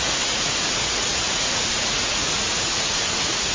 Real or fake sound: fake